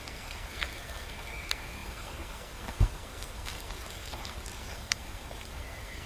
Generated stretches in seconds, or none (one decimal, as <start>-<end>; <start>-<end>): 0.0-6.1